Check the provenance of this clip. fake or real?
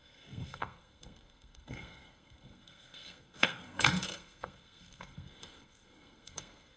fake